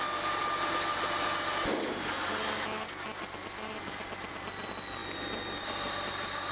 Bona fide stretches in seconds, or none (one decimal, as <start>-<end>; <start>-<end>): 0.0-6.5